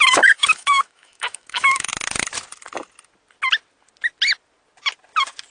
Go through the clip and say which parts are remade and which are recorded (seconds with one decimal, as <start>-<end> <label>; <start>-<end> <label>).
0.0-1.9 remade; 1.9-5.5 recorded